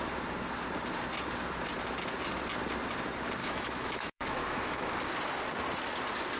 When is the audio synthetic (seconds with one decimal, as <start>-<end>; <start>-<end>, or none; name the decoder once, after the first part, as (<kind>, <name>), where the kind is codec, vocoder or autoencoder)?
3.4-4.9 (autoencoder, DAC-VAE)